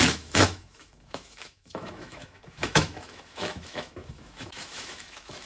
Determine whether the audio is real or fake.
fake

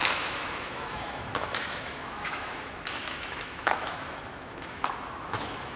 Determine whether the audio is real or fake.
fake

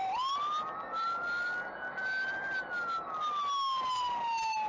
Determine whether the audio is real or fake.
real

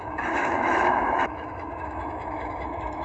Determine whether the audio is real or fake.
fake